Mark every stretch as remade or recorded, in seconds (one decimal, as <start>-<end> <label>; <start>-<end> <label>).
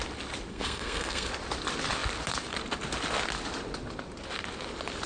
0.0-0.5 recorded; 0.5-1.3 remade; 1.3-5.1 recorded